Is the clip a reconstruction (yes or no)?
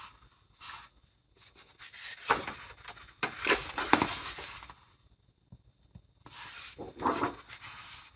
no